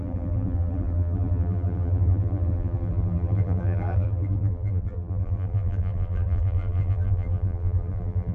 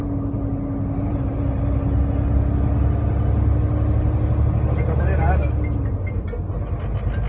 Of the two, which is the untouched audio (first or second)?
second